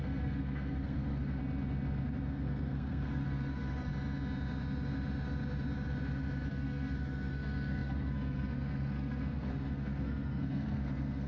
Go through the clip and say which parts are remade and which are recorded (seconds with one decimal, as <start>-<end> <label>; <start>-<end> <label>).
0.0-1.4 remade; 1.4-2.3 recorded; 2.3-3.9 remade; 3.9-6.5 recorded; 6.5-11.3 remade